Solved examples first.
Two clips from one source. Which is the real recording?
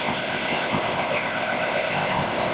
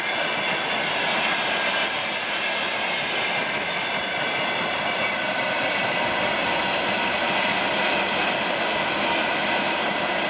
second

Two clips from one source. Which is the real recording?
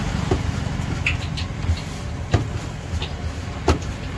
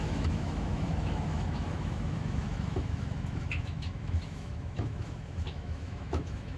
first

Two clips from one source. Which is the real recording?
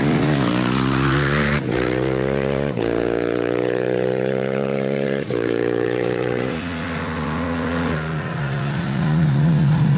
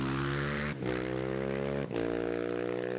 second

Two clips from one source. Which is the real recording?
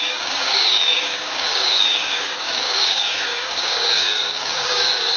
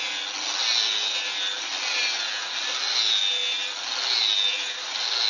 second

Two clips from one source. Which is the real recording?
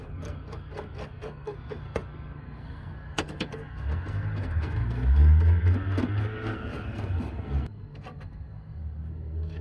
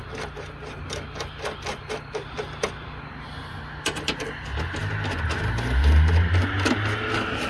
second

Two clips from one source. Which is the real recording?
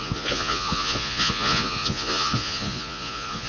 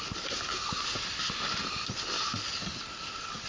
second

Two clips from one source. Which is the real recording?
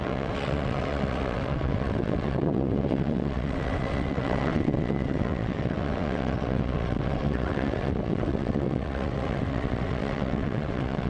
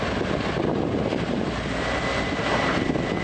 second